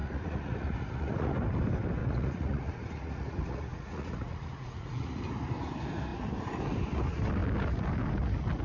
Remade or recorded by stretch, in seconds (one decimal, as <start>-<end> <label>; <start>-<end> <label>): 0.0-1.3 remade; 1.3-2.0 recorded; 2.0-5.2 remade; 5.2-8.6 recorded